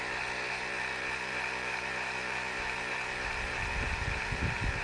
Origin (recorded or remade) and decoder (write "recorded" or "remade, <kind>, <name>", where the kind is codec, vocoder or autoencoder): remade, vocoder, BigVGAN v2